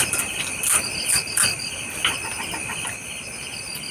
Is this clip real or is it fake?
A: real